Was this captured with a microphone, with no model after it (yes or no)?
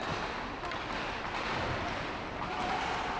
yes